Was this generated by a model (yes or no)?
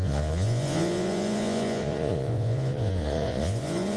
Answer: yes